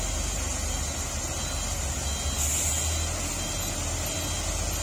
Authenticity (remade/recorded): recorded